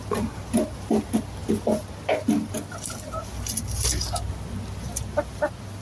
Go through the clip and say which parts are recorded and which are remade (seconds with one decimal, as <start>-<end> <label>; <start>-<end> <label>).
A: 0.0-5.8 recorded